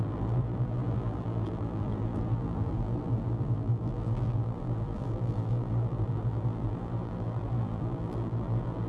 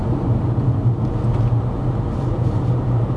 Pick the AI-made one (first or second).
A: first